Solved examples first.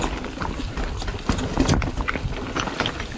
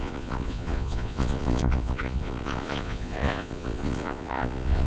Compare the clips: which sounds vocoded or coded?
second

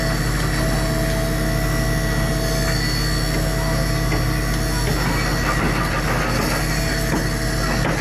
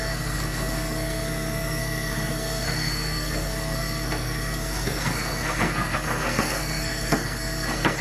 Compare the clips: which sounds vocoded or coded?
second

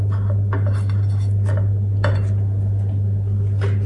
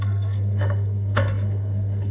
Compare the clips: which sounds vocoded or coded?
second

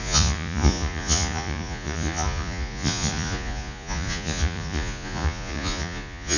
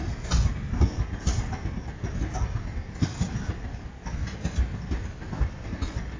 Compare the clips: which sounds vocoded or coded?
first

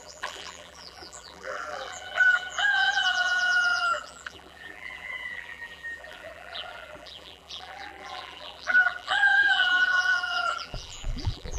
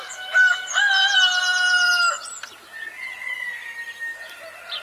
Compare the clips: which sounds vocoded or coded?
first